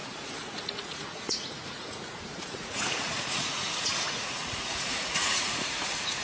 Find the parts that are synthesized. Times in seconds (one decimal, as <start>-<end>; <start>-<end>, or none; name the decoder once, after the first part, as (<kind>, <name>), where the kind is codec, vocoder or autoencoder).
0.0-6.2 (vocoder, Vocos)